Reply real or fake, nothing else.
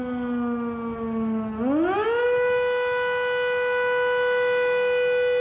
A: real